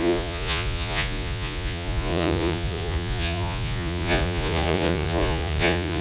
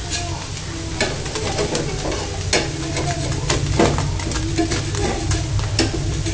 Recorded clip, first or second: second